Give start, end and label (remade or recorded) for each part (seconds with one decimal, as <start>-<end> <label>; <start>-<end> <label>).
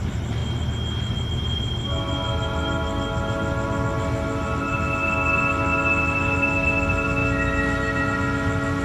0.0-8.8 recorded